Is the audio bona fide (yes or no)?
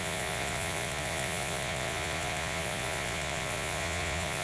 no